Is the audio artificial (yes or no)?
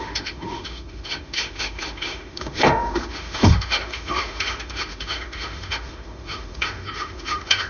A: yes